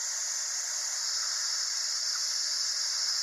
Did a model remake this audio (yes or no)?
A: yes